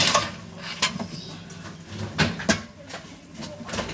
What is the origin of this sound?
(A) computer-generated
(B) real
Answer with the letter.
B